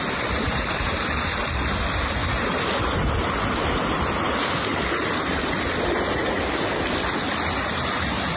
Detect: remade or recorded recorded